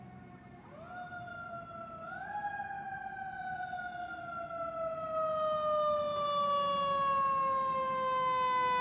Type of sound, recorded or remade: recorded